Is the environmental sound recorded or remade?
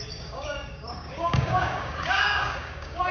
remade